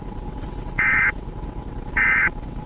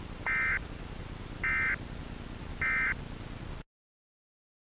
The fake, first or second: first